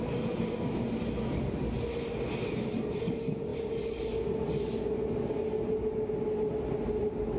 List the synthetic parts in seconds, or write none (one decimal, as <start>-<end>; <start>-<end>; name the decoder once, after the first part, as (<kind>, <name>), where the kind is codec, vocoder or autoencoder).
none